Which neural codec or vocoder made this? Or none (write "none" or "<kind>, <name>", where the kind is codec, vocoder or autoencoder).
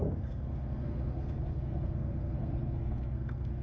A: codec, SNAC